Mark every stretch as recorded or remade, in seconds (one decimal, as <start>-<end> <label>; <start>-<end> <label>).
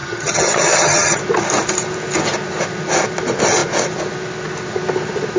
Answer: 0.0-1.2 remade; 1.2-5.4 recorded